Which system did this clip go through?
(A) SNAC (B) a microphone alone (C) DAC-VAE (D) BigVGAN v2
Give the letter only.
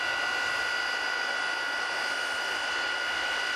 B